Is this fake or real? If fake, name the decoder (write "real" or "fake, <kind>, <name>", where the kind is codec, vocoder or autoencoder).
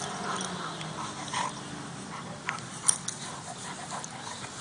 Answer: real